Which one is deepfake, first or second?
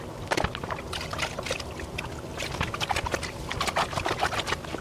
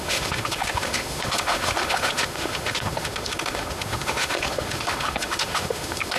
second